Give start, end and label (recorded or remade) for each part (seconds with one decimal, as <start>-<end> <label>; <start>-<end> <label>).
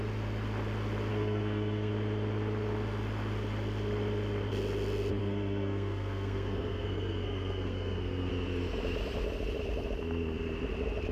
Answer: 0.0-1.1 recorded; 1.1-1.9 remade; 1.9-5.2 recorded; 5.2-8.3 remade; 8.3-11.1 recorded